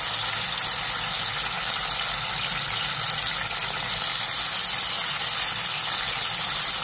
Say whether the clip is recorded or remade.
recorded